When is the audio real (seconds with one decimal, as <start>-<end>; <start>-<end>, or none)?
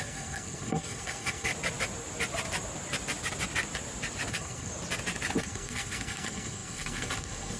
1.5-4.3; 4.7-5.4